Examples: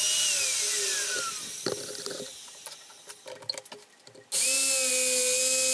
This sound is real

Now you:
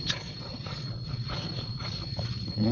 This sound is fake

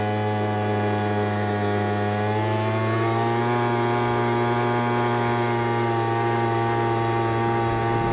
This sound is real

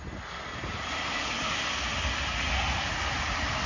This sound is real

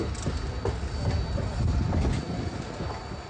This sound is real